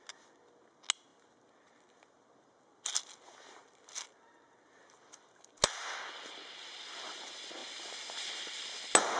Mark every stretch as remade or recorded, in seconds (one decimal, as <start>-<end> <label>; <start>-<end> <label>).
0.0-9.2 recorded